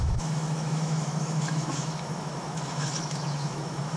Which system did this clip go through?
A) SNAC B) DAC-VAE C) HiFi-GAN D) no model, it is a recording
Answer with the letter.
B